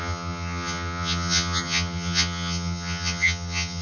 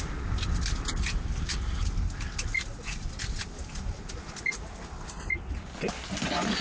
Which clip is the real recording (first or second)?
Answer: second